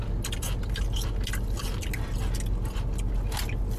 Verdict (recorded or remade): recorded